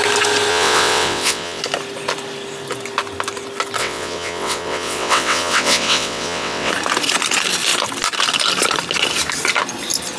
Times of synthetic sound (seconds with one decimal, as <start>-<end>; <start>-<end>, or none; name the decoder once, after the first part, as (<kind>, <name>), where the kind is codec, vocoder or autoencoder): 0.5-1.6 (vocoder, WaveNeXt); 3.8-6.7

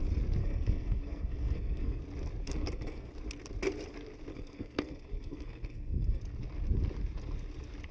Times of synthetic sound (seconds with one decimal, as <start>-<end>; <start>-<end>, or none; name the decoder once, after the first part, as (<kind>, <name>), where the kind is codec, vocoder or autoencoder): 0.4-2.0 (codec, SNAC); 2.4-3.1; 4.3-6.2

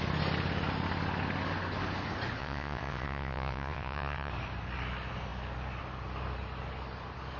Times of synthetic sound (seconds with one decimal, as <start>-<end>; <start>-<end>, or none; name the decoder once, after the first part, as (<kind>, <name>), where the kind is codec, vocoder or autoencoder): 2.4-4.3 (vocoder, WaveNeXt)

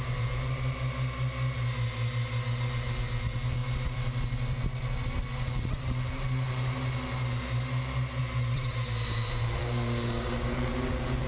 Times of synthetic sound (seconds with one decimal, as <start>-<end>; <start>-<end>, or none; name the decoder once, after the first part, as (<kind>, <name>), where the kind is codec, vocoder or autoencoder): 9.6-10.7 (codec, DAC)

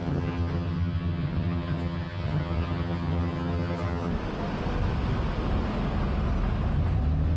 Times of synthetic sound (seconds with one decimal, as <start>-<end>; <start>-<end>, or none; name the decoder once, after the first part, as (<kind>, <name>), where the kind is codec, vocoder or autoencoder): 0.0-4.1 (vocoder, HiFi-GAN)

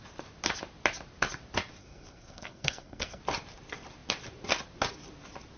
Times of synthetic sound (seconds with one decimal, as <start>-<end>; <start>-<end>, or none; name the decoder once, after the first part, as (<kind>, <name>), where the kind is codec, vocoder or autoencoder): 1.8-3.2 (codec, SNAC)

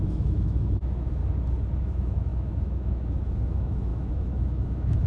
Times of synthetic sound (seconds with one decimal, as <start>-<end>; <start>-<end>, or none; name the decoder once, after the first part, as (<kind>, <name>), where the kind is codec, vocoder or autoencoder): 0.0-1.2 (autoencoder, DAC-VAE); 1.8-5.1

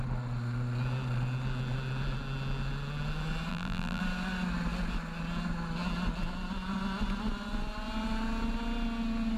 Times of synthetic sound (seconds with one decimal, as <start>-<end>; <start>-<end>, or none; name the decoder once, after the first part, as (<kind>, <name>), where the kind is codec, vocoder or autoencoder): 3.5-4.0 (vocoder, BigVGAN v2)